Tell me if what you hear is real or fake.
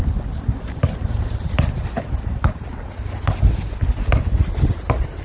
real